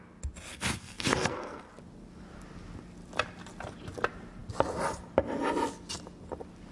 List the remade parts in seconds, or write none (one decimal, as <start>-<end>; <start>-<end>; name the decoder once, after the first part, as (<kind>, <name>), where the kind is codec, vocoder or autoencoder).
0.5-1.7 (codec, SNAC)